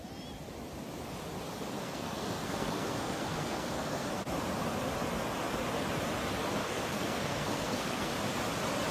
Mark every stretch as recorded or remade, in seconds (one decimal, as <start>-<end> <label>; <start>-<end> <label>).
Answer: 0.0-1.8 recorded; 1.8-4.2 remade; 4.2-6.6 recorded; 6.6-8.1 remade; 8.1-8.9 recorded

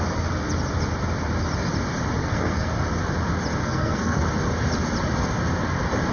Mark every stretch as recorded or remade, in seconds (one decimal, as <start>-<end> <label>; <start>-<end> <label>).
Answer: 0.0-2.2 recorded; 2.2-2.7 remade; 2.7-3.6 recorded; 3.6-4.2 remade; 4.2-6.1 recorded

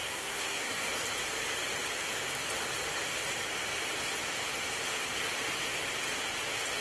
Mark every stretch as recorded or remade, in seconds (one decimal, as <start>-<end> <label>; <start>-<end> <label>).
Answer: 0.0-0.9 remade; 0.9-6.8 recorded

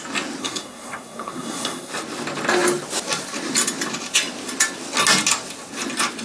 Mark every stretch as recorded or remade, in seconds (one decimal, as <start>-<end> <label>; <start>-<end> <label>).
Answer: 0.0-0.4 recorded; 0.4-1.9 remade; 1.9-6.2 recorded

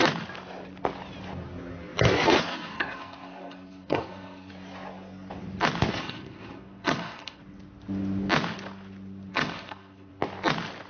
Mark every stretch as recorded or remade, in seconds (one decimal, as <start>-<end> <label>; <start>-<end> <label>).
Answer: 0.0-2.5 recorded; 2.5-4.5 remade; 4.5-5.9 recorded; 5.9-7.4 remade; 7.4-9.3 recorded; 9.3-10.1 remade; 10.1-10.9 recorded

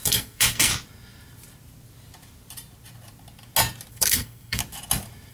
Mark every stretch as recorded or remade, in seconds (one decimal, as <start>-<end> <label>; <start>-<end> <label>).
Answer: 0.0-0.7 remade; 0.7-3.9 recorded; 3.9-4.6 remade; 4.6-5.3 recorded

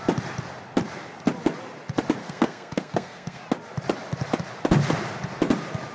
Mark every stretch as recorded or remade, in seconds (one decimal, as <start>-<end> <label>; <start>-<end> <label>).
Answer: 0.0-2.2 recorded; 2.2-3.4 remade; 3.4-5.9 recorded

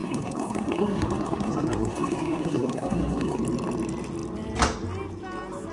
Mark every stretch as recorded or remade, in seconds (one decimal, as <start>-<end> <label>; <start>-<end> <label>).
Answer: 0.0-3.4 remade; 3.4-5.7 recorded